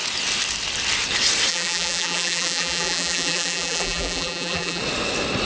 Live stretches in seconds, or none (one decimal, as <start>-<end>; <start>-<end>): 0.0-1.5; 4.8-5.5